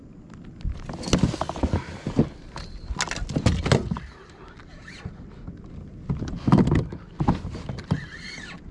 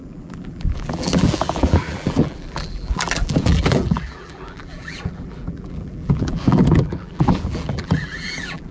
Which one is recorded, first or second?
first